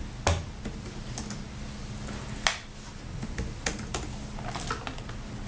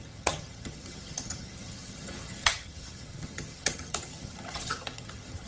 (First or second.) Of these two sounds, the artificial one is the second